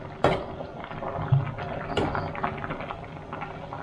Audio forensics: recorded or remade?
recorded